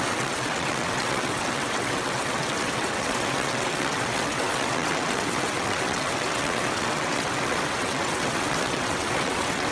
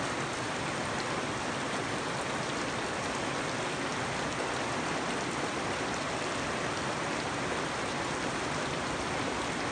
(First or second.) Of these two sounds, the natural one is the second